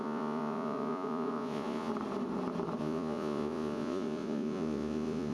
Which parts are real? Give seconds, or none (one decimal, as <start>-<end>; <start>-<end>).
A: 1.9-2.8